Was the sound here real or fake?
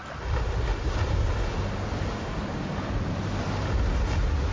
real